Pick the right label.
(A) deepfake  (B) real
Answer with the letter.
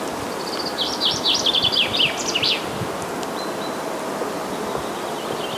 B